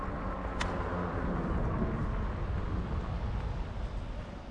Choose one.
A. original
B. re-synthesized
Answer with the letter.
A